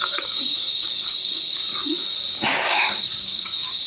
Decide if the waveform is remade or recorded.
remade